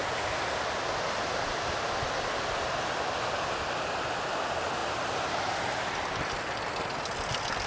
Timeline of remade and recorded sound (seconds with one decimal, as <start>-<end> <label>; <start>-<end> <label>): 0.0-4.8 recorded; 4.8-6.7 remade; 6.7-7.7 recorded